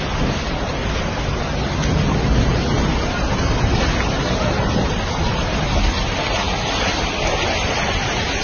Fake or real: real